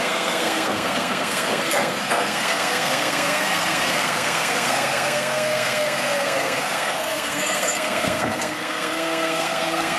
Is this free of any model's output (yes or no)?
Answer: no